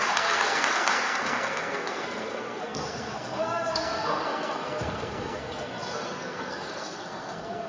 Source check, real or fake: fake